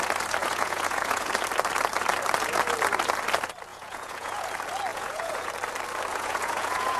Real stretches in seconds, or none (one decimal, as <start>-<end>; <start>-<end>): 0.0-0.4; 1.3-3.7; 4.5-4.9; 5.5-6.1

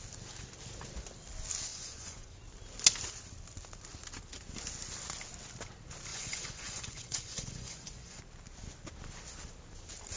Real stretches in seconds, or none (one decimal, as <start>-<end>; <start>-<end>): 0.0-1.7; 2.4-6.1; 8.2-10.2

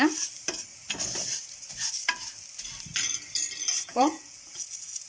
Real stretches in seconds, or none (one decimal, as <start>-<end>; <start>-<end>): 0.0-3.9

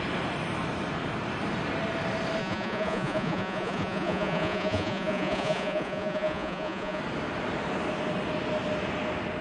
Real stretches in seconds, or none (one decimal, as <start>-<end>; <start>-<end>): 0.0-2.4; 7.0-9.4

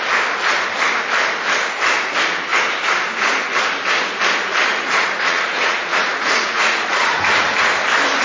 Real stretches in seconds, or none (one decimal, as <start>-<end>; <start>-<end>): 0.0-4.7; 7.7-8.2

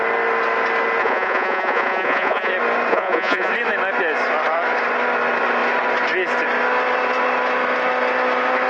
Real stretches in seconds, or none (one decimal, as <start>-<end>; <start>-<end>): 0.0-1.0; 2.5-2.9; 3.5-8.7

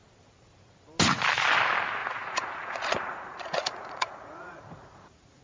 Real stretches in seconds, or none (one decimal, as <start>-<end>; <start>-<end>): 0.0-2.0